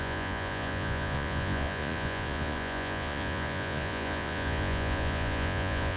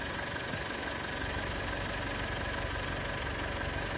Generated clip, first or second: first